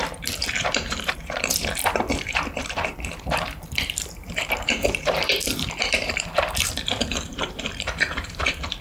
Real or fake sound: fake